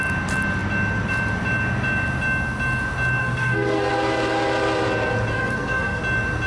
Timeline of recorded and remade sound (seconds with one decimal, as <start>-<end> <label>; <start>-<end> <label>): 0.0-3.2 recorded; 3.2-3.9 remade; 3.9-5.3 recorded; 5.3-6.0 remade; 6.0-6.5 recorded